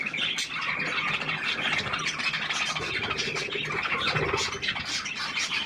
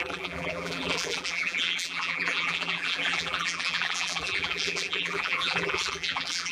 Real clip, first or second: first